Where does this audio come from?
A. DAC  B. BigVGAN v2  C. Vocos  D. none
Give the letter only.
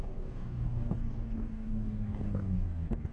A